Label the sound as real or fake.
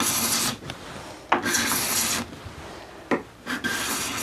real